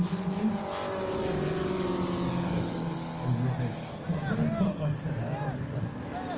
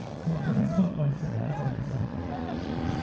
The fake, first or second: second